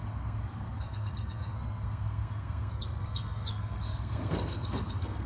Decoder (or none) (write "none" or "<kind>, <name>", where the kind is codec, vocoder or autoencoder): codec, SNAC